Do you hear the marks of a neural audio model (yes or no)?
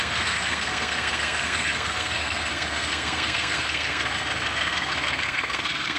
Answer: yes